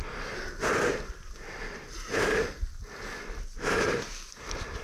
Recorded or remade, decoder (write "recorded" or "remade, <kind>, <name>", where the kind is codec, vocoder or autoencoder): recorded